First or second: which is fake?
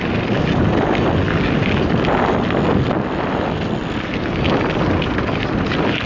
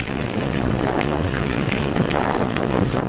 second